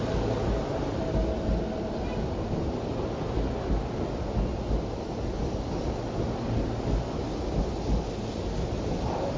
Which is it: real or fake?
real